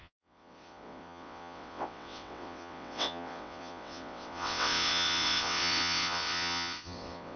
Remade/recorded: remade